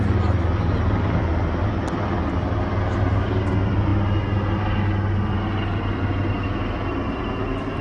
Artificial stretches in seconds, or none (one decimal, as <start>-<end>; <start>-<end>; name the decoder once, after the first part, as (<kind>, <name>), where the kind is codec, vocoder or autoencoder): none